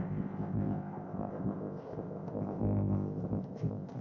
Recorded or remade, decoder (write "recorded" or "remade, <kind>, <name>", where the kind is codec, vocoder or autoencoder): remade, codec, ZipCodec